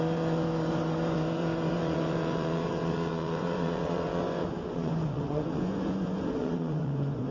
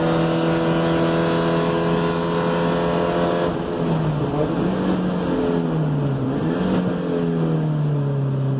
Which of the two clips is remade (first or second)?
first